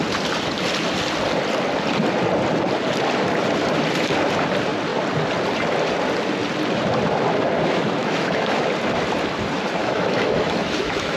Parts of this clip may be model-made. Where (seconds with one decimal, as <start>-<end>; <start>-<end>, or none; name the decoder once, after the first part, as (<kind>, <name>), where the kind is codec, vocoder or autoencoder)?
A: 8.0-8.6 (autoencoder, DAC-VAE); 9.8-11.2